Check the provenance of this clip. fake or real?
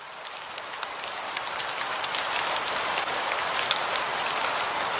real